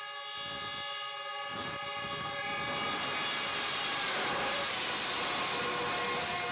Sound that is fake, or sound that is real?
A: real